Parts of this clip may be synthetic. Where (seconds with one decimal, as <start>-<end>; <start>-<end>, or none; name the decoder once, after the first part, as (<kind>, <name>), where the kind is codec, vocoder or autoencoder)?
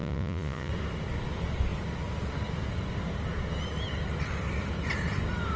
0.0-0.7 (vocoder, Vocos)